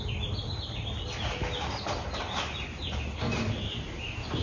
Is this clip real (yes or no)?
yes